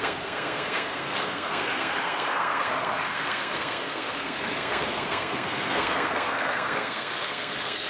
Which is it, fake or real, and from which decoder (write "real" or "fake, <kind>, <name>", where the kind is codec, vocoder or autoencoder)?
fake, codec, SNAC